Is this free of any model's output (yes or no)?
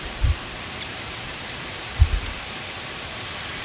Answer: no